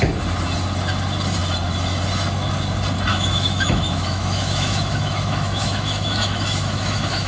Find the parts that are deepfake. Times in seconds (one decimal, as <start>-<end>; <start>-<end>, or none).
3.1-7.3